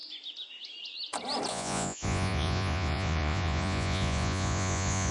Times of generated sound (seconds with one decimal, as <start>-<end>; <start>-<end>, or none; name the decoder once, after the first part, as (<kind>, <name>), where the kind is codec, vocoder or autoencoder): 1.5-5.1 (vocoder, Vocos)